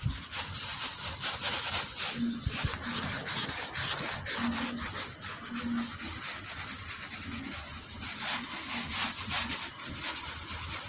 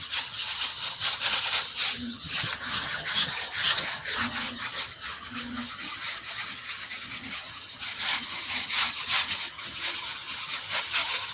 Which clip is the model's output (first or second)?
second